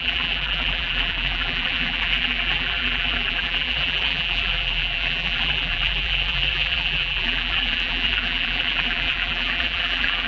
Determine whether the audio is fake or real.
fake